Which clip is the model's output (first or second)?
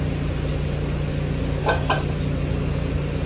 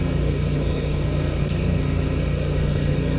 second